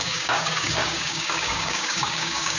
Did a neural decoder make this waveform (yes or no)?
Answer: yes